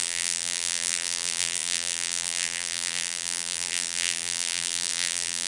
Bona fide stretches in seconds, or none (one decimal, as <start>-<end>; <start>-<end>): none